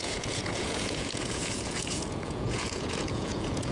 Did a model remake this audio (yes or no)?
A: yes